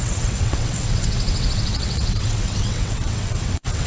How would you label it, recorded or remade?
remade